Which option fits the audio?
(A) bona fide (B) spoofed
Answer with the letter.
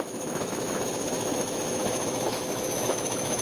B